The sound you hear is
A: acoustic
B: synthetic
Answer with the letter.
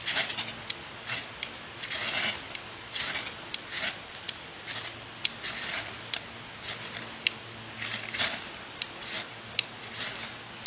A